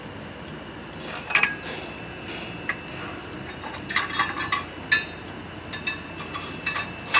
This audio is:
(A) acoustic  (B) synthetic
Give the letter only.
A